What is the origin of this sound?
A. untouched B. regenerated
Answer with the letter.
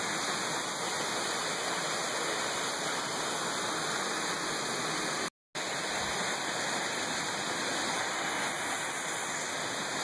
A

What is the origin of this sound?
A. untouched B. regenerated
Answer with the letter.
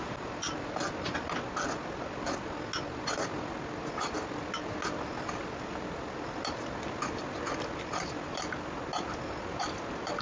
A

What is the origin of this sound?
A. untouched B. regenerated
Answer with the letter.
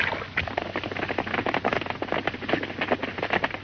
A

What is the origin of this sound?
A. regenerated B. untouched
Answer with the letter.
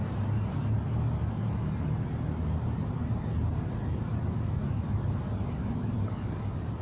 B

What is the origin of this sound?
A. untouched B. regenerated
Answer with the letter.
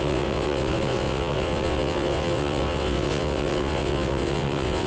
B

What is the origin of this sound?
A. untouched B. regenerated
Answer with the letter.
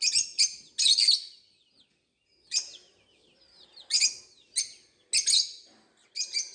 A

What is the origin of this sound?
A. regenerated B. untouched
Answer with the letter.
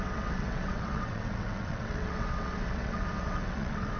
A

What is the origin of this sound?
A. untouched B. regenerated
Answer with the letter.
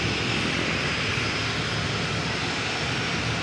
A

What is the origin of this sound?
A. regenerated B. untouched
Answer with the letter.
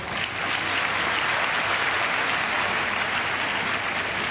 B